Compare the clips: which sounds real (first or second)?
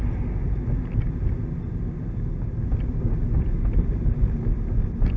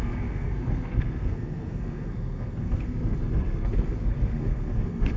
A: first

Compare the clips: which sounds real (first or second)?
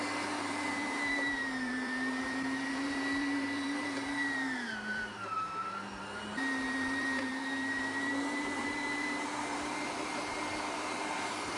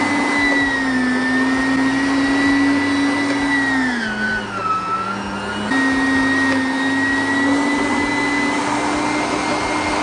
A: second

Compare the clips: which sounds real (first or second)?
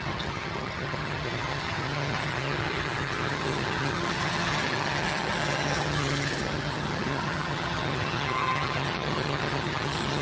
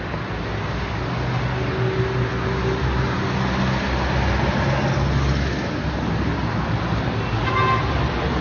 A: second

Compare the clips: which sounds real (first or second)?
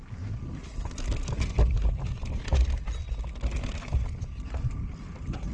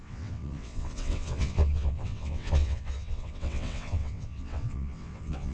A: first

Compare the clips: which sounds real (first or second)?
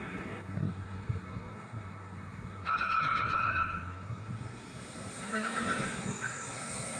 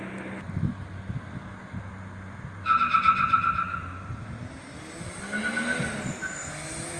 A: second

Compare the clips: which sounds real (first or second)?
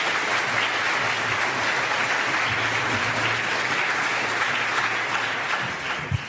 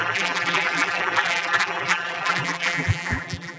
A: first